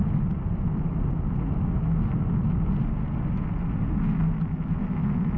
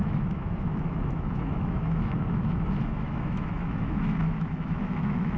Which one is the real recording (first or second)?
first